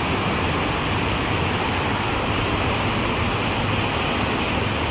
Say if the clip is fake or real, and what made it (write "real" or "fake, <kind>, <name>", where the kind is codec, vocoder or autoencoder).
real